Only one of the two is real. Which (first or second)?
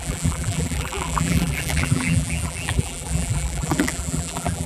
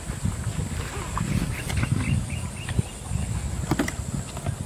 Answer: second